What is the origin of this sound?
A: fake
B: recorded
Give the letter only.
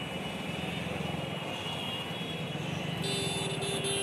B